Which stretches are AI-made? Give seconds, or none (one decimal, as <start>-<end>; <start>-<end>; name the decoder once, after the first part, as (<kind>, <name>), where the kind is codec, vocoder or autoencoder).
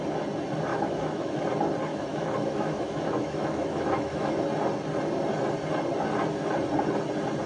0.7-1.5 (autoencoder, DAC-VAE); 1.9-4.4